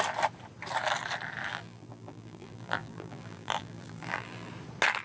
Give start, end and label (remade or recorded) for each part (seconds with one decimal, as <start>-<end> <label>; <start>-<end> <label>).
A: 0.0-1.5 recorded; 1.5-4.5 remade; 4.5-5.0 recorded